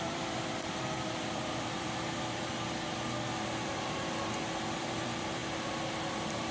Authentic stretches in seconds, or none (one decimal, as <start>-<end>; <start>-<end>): 2.5-4.8; 5.4-6.5